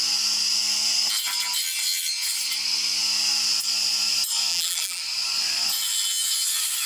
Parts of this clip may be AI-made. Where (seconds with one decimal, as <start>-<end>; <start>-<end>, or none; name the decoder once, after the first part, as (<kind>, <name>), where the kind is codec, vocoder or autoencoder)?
4.5-5.0 (vocoder, BigVGAN v2)